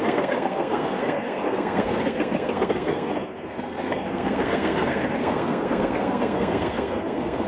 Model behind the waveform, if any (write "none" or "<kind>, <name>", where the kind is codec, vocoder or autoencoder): codec, SNAC